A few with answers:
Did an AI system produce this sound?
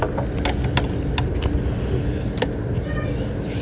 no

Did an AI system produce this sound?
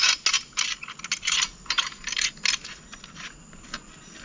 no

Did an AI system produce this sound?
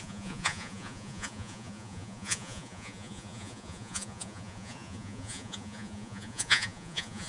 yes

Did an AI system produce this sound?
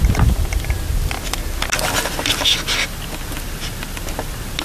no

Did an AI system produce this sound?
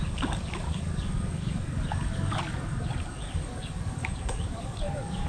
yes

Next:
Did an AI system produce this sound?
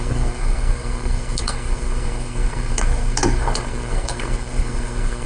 yes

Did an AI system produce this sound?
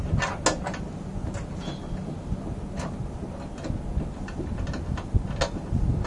no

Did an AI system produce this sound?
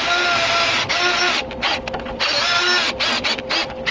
no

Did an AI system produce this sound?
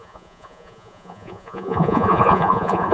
yes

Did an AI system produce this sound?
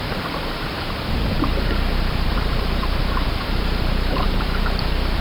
yes